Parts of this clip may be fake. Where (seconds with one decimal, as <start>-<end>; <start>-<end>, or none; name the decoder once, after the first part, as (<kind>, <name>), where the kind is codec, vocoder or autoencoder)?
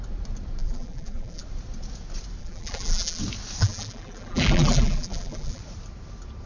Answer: 0.6-1.4 (vocoder, BigVGAN v2); 2.4-3.2; 3.6-5.6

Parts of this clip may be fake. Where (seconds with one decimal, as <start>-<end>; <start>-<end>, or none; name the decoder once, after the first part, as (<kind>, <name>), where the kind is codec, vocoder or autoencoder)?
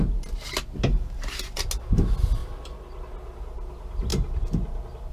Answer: 2.4-3.0 (vocoder, BigVGAN v2); 4.1-5.1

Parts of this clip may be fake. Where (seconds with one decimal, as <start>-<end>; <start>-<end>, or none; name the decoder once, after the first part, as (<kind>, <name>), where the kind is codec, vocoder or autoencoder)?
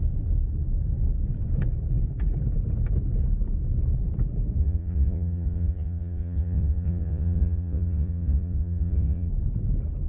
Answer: 4.6-9.3 (vocoder, Vocos)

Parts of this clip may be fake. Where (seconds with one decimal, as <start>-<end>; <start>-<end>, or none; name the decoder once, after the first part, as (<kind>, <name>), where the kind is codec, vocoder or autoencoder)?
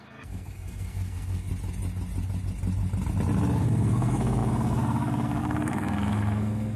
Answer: 0.0-1.5 (codec, SNAC); 3.6-6.8